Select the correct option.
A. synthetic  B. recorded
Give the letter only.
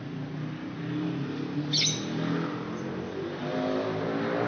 B